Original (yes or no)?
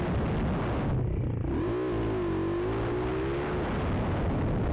yes